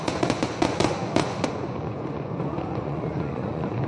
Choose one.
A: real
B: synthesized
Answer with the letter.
B